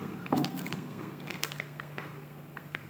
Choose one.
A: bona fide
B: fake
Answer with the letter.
B